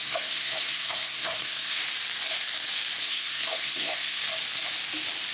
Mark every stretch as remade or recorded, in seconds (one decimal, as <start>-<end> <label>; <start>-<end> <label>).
0.0-1.8 remade; 1.8-3.0 recorded; 3.0-4.2 remade; 4.2-5.3 recorded